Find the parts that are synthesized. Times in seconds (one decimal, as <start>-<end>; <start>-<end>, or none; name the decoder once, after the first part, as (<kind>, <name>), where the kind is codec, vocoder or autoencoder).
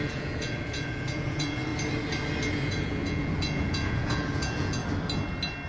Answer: 0.0-1.7 (vocoder, Vocos); 2.5-4.8